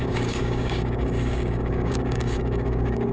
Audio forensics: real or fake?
fake